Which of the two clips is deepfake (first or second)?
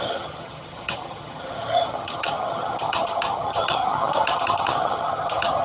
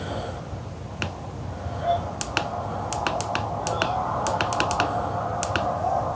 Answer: first